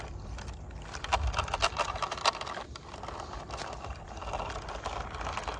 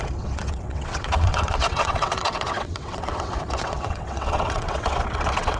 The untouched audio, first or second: first